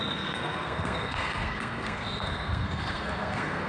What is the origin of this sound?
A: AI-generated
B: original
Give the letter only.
A